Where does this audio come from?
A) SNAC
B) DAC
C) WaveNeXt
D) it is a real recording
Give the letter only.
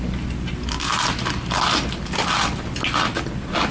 D